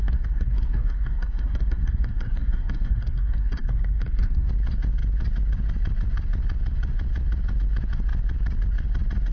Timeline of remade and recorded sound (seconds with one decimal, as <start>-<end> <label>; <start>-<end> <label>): 0.0-4.5 remade; 4.5-9.3 recorded

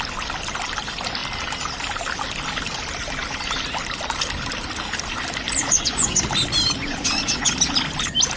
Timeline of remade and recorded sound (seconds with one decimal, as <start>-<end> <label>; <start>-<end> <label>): 0.0-5.6 recorded; 5.6-6.2 remade; 6.2-6.8 recorded; 6.8-7.5 remade; 7.5-8.4 recorded

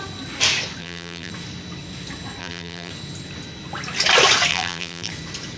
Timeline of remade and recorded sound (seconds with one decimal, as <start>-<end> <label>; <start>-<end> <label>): 0.0-0.8 recorded; 0.8-1.3 remade; 1.3-2.4 recorded; 2.4-2.9 remade; 2.9-4.5 recorded; 4.5-5.1 remade; 5.1-5.6 recorded

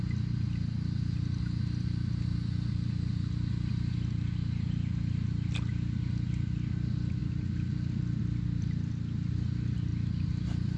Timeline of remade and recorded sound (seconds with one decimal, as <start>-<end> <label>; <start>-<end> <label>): 0.0-10.8 recorded

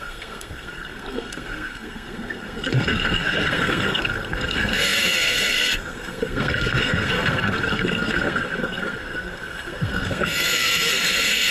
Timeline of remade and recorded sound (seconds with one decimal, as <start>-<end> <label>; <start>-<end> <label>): 0.0-11.5 remade